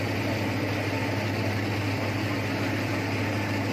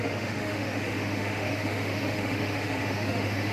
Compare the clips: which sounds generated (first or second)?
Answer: second